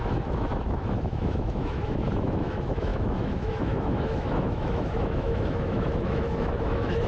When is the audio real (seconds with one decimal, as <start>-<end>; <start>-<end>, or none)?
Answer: none